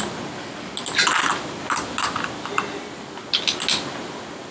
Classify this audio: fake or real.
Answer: real